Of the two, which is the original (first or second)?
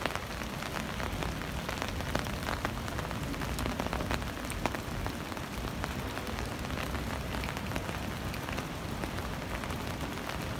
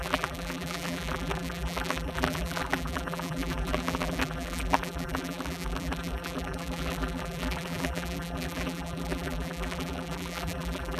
first